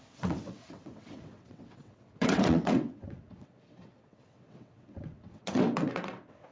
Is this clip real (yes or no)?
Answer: no